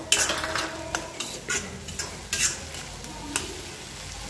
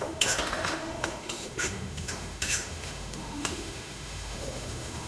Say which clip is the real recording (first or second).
first